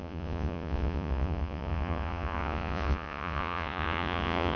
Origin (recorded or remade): remade